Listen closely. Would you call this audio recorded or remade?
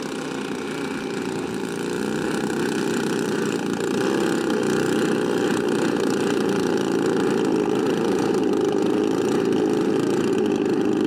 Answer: remade